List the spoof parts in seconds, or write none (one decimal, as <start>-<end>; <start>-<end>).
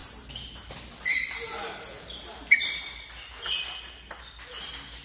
none